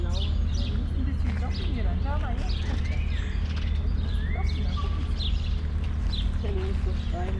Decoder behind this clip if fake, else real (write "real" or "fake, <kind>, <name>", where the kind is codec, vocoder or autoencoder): real